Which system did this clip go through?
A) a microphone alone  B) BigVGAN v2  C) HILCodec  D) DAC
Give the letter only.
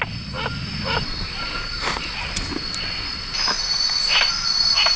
A